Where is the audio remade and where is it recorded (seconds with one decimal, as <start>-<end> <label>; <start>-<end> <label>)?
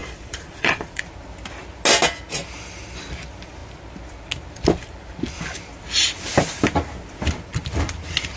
0.0-1.0 remade; 1.0-8.4 recorded